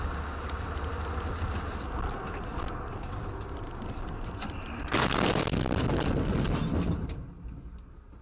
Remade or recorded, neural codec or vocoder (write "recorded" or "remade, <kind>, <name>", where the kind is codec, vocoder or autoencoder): recorded